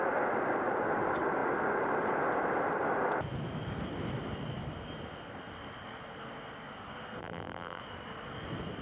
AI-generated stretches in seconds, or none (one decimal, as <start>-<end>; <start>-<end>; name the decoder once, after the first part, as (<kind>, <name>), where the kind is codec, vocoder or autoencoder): 7.2-7.8 (vocoder, BigVGAN v2)